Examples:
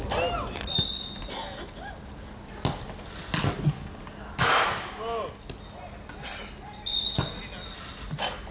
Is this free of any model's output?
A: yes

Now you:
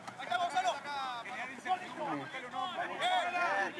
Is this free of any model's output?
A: yes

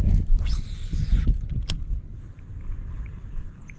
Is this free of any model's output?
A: yes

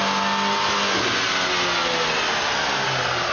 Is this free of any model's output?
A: yes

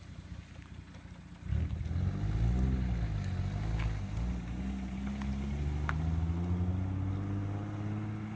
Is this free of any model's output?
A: yes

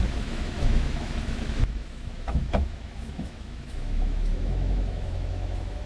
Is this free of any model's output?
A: no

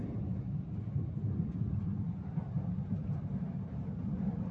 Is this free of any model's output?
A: yes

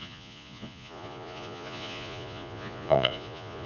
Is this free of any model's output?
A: no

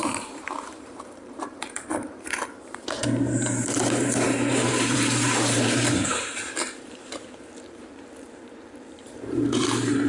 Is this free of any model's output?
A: no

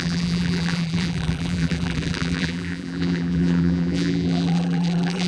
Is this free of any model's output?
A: no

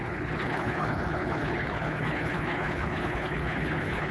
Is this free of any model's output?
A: no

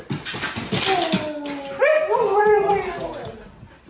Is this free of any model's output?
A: yes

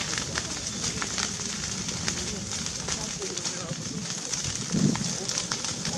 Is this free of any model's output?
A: yes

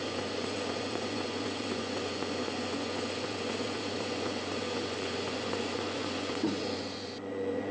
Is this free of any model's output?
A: no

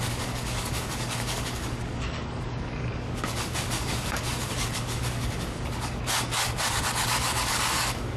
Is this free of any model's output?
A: no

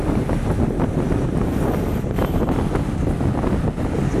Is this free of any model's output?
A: yes